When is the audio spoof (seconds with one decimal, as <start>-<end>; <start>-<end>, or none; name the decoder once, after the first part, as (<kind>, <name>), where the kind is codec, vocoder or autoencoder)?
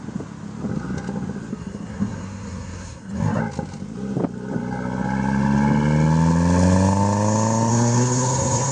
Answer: 1.5-3.4 (codec, SNAC); 7.7-8.7